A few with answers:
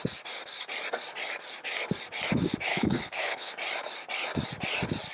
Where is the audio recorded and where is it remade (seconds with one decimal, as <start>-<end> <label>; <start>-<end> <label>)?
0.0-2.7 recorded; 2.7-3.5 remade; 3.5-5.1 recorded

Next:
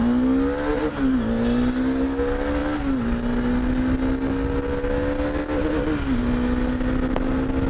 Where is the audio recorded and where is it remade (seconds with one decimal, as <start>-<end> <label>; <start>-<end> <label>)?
0.0-7.7 recorded

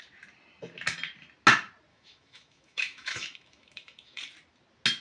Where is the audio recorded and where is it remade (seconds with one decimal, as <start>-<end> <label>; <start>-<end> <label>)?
0.0-1.9 recorded; 1.9-4.2 remade; 4.2-5.0 recorded

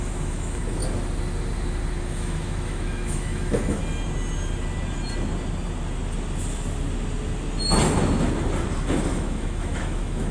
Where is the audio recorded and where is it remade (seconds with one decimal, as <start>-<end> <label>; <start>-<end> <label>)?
0.0-0.8 remade; 0.8-2.0 recorded; 2.0-3.8 remade; 3.8-9.1 recorded; 9.1-10.3 remade

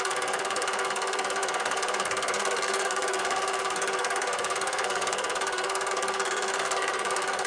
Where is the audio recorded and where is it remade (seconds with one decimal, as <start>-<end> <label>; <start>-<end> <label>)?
0.0-7.5 remade

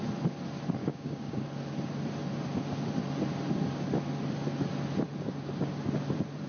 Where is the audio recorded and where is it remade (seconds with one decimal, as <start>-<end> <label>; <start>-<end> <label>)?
0.0-0.8 recorded; 0.8-1.4 remade; 1.4-6.5 recorded